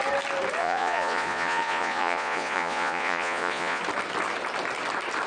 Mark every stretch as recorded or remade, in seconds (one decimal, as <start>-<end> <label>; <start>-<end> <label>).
0.0-0.6 recorded; 0.6-3.8 remade; 3.8-5.3 recorded